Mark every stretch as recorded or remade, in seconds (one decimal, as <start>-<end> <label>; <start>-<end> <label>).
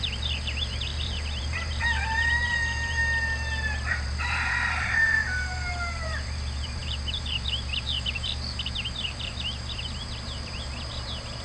0.0-3.0 remade; 3.0-3.9 recorded; 3.9-11.4 remade